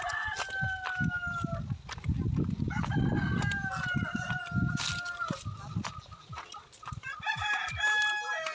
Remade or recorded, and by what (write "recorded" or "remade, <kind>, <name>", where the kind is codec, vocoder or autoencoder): recorded